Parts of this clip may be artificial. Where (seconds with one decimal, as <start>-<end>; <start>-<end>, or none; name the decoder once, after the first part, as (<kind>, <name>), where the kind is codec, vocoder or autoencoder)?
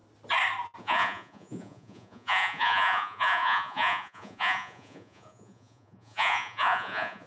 0.8-7.3 (vocoder, Vocos)